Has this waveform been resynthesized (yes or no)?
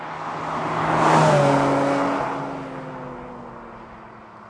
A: no